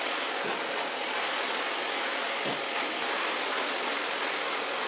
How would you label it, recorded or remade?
recorded